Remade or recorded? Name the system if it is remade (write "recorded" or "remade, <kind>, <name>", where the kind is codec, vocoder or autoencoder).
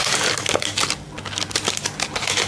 recorded